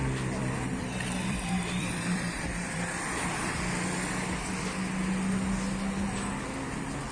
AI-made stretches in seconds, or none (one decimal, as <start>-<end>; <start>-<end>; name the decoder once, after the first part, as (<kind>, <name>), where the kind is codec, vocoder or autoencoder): 0.4-3.7 (vocoder, BigVGAN v2)